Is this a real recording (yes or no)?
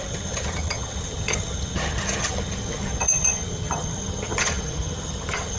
no